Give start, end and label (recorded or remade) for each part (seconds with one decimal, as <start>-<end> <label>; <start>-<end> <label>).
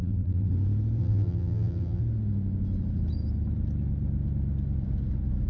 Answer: 0.0-0.5 remade; 0.5-1.0 recorded; 1.0-2.0 remade; 2.0-5.5 recorded